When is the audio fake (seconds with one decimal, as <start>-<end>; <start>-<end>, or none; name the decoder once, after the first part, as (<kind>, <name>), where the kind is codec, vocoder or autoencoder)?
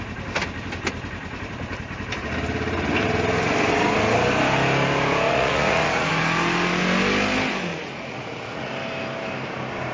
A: 5.3-6.1 (vocoder, Vocos); 7.7-8.7